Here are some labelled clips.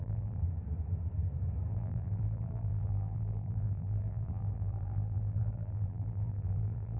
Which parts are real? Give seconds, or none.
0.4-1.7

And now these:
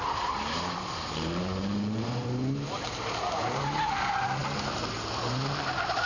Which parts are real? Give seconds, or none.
none